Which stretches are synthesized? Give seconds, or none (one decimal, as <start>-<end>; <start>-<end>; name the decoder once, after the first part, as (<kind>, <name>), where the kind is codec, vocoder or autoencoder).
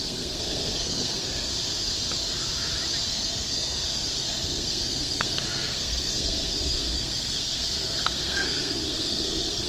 0.0-1.5 (codec, SNAC); 3.1-9.7